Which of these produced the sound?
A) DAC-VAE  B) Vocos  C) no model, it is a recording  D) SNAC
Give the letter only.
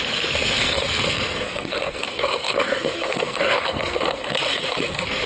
D